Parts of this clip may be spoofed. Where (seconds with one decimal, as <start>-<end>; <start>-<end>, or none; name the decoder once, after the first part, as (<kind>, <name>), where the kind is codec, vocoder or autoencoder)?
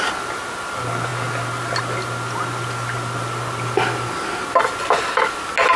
none